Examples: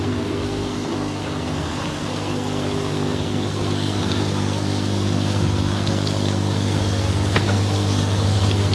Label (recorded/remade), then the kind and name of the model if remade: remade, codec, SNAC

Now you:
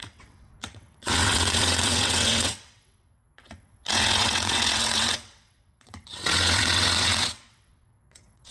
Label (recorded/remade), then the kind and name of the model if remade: remade, vocoder, WaveNeXt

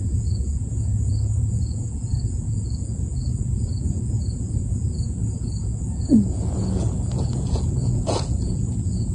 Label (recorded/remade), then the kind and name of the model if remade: remade, vocoder, Vocos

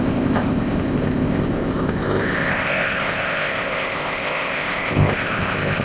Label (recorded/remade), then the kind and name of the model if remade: remade, codec, ZipCodec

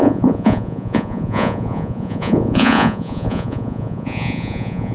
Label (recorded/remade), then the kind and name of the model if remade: remade, vocoder, Vocos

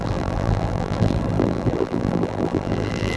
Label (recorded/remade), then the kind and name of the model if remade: remade, vocoder, BigVGAN v2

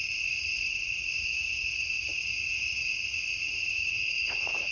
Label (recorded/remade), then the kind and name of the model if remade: remade, vocoder, Vocos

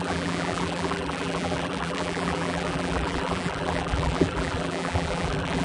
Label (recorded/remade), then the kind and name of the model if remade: remade, vocoder, BigVGAN v2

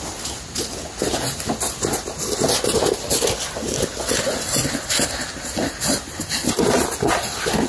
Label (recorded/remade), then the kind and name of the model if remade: recorded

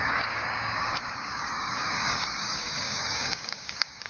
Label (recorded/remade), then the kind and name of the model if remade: remade, codec, DAC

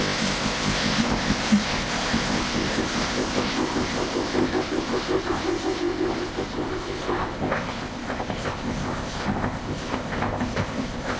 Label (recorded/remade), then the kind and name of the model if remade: remade, codec, ZipCodec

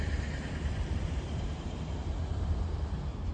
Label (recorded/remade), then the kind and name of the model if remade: remade, vocoder, BigVGAN v2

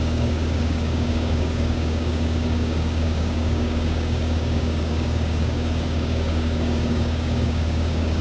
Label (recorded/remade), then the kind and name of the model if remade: remade, codec, DAC